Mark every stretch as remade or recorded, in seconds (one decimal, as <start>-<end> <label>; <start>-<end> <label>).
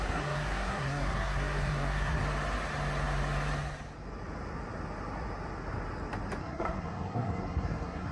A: 0.0-2.2 remade; 2.2-6.4 recorded; 6.4-8.1 remade